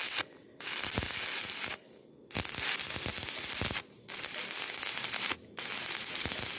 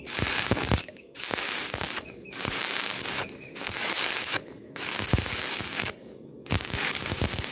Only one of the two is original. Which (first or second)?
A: first